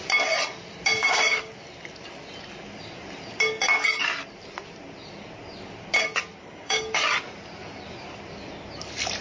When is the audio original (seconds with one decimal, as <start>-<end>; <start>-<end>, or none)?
0.0-1.0; 1.5-6.4; 7.0-9.2